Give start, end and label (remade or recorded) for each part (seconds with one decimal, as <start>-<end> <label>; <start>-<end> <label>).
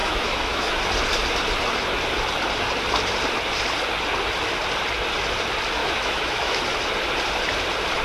0.0-0.8 remade; 0.8-5.8 recorded; 5.8-6.6 remade; 6.6-8.0 recorded